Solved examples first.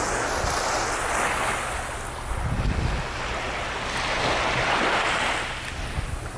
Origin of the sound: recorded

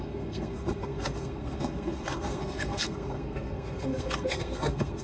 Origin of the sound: remade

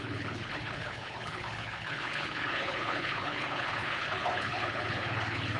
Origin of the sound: remade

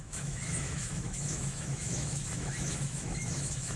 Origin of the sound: remade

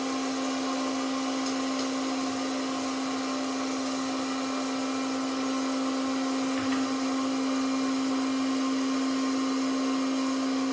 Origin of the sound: recorded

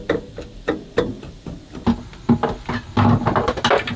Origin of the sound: recorded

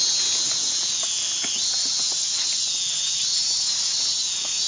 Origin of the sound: recorded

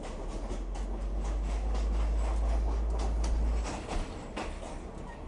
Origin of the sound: recorded